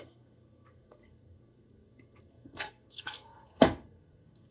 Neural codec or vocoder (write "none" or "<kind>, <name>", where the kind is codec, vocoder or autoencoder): codec, SNAC